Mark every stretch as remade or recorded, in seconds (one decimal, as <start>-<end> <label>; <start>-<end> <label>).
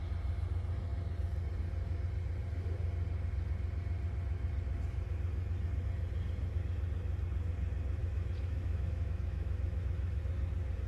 0.0-8.0 recorded; 8.0-10.2 remade; 10.2-10.9 recorded